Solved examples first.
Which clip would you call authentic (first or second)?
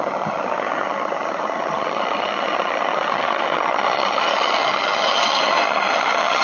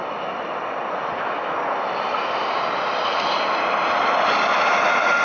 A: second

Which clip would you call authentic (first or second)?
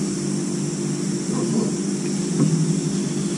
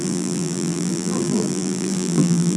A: first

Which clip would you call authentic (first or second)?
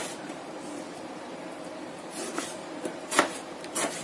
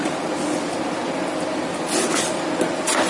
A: second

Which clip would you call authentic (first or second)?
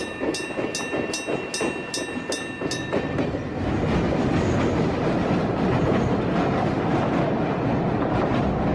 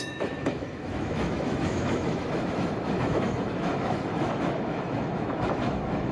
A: first